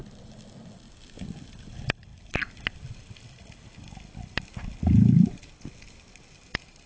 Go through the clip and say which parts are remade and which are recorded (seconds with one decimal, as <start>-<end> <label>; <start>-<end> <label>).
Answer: 0.0-6.9 recorded